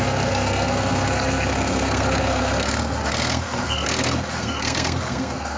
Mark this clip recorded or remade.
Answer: remade